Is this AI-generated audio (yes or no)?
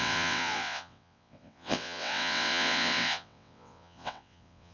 yes